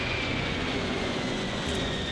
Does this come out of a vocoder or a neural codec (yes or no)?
yes